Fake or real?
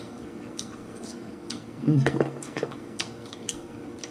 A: fake